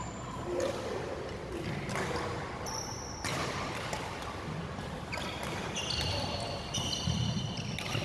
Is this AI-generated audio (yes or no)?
no